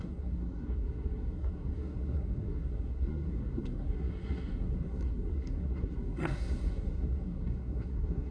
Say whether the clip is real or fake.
fake